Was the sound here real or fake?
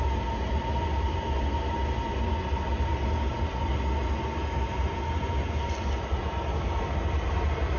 real